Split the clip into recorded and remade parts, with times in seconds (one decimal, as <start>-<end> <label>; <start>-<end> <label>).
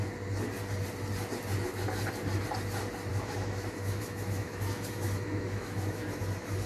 0.0-3.1 recorded; 3.1-6.2 remade; 6.2-6.7 recorded